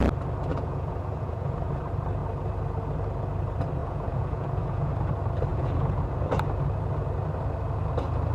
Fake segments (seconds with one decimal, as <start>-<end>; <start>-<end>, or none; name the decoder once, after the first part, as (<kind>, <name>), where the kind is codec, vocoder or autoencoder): 0.5-1.8 (vocoder, Vocos); 3.8-4.9; 5.5-6.0